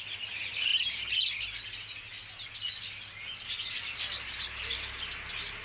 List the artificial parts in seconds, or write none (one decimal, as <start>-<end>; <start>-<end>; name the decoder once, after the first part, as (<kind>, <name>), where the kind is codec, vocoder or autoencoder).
0.0-0.7 (vocoder, BigVGAN v2); 4.0-5.6